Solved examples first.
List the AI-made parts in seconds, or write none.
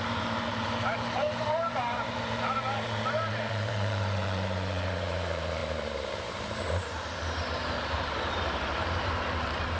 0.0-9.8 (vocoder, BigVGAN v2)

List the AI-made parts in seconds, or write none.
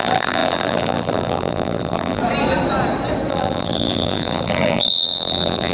0.0-2.2 (vocoder, BigVGAN v2); 3.3-5.7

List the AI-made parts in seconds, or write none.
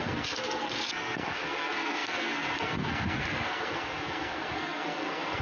0.0-5.4 (codec, SNAC)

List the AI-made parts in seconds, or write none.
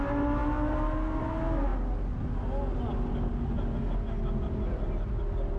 none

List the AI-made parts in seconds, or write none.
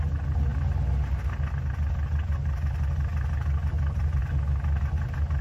0.0-0.5 (vocoder, BigVGAN v2); 3.7-4.2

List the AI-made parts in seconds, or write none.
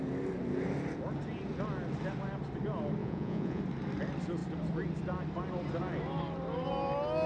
3.0-3.6 (vocoder, Vocos)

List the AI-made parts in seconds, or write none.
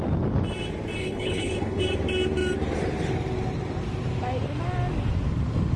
1.0-1.8 (codec, HILCodec)